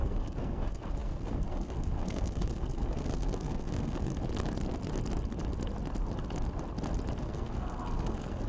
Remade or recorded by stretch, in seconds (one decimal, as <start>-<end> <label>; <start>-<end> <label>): 0.0-4.1 remade; 4.1-7.2 recorded; 7.2-8.5 remade